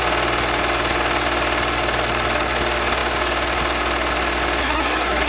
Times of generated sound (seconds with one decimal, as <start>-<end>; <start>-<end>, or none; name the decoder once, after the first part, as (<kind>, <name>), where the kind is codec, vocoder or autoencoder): 4.6-5.3 (codec, SNAC)